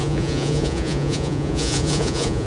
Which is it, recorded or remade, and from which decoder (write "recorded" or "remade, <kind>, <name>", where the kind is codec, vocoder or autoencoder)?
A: remade, vocoder, Vocos